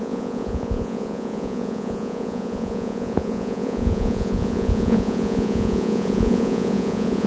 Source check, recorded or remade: remade